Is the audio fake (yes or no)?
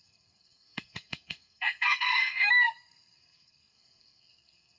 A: yes